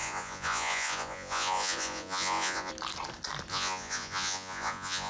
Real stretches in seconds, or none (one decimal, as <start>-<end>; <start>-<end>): 2.7-3.5